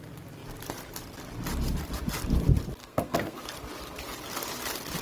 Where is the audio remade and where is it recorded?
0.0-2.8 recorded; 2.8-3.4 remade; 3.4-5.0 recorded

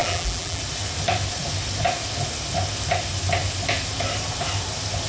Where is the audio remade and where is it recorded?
0.0-0.6 remade; 0.6-5.1 recorded

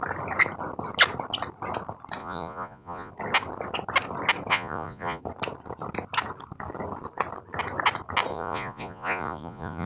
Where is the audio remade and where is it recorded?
0.0-2.2 recorded; 2.2-3.1 remade; 3.1-4.5 recorded; 4.5-5.2 remade; 5.2-8.3 recorded; 8.3-9.9 remade

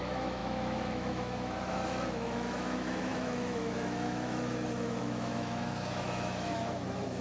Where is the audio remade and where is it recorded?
0.0-7.2 remade

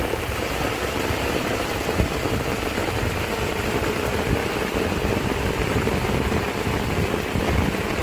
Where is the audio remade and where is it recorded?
0.0-8.0 recorded

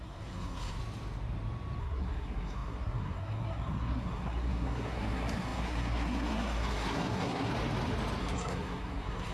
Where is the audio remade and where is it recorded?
0.0-0.8 remade; 0.8-1.8 recorded; 1.8-7.5 remade; 7.5-8.2 recorded; 8.2-9.3 remade

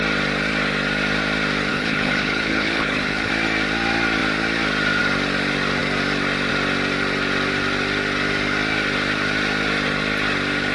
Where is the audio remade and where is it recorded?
0.0-1.7 recorded; 1.7-3.3 remade; 3.3-10.7 recorded

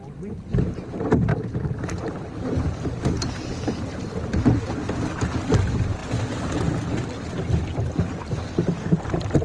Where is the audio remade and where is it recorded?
0.0-1.3 recorded; 1.3-1.8 remade; 1.8-9.4 recorded